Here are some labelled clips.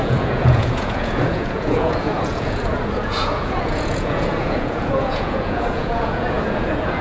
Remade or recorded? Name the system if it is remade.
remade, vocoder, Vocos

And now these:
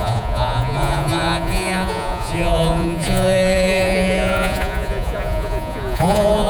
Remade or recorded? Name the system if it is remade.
remade, vocoder, Vocos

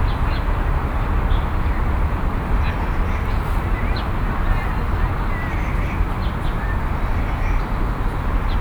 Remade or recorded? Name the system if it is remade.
recorded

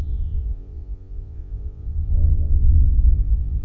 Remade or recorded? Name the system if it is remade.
remade, vocoder, Vocos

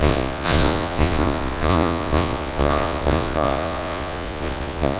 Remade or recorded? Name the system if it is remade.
remade, vocoder, Vocos